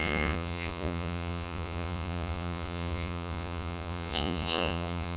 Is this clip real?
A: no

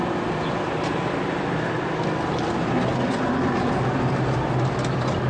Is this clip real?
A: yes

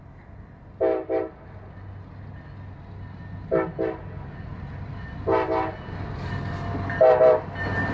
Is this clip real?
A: yes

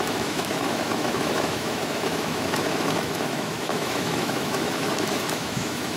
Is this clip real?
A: no